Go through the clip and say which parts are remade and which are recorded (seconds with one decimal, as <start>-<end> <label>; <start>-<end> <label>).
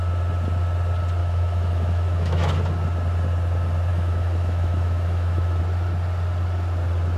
0.0-1.2 recorded; 1.2-2.5 remade; 2.5-3.9 recorded; 3.9-5.6 remade; 5.6-7.2 recorded